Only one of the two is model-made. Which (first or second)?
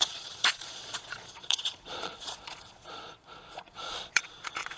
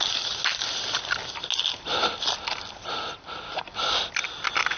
first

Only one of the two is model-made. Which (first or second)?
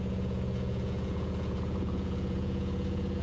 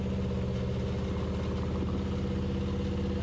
first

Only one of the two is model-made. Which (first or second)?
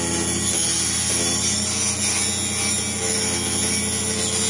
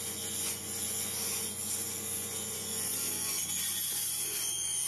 second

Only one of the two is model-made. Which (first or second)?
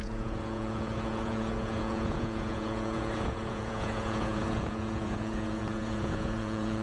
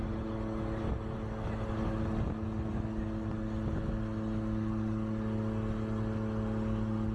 first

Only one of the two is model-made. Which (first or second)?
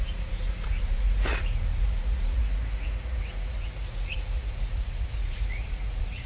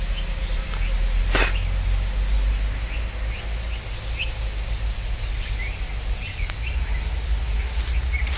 first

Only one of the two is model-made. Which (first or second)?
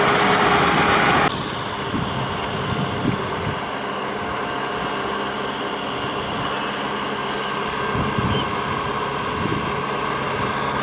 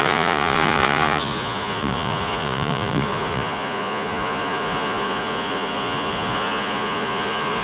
second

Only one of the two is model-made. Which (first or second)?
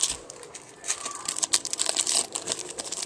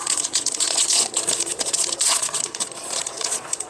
second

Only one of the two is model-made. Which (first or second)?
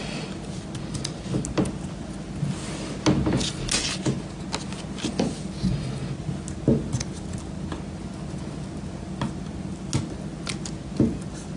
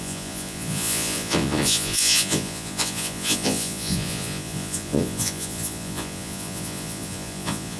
second